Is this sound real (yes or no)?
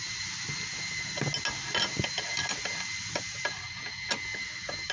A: yes